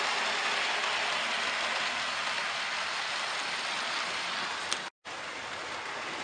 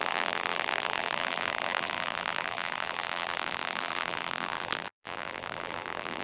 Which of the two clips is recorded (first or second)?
first